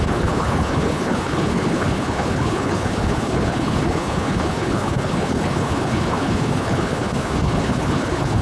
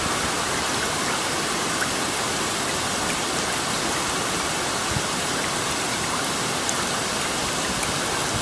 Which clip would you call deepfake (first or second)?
first